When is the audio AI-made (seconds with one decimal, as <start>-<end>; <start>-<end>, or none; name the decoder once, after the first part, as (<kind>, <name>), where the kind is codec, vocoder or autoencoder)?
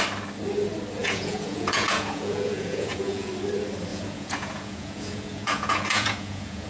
1.0-3.3 (vocoder, Vocos); 3.9-6.7